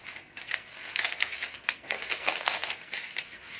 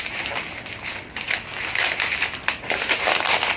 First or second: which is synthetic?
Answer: first